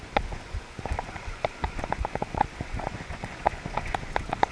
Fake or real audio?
fake